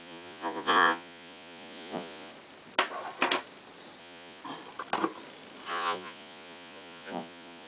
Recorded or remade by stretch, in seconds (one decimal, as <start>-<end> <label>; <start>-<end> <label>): 0.0-2.3 remade; 2.3-4.0 recorded; 4.0-4.4 remade; 4.4-5.7 recorded; 5.7-7.7 remade